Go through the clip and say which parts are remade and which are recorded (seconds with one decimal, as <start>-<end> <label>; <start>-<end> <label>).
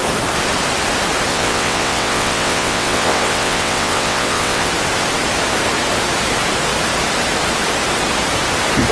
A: 0.0-1.3 recorded; 1.3-4.7 remade; 4.7-8.9 recorded